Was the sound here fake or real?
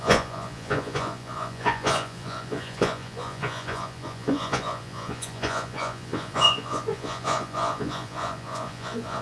fake